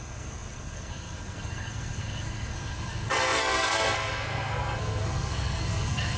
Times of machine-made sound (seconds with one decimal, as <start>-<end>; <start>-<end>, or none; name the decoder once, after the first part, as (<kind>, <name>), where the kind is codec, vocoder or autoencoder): 0.0-6.2 (codec, SNAC)